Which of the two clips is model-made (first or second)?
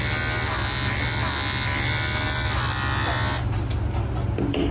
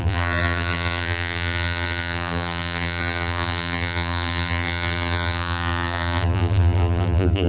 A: second